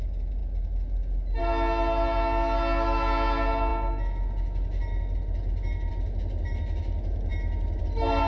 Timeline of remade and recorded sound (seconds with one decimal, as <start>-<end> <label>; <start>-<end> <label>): 0.0-8.3 recorded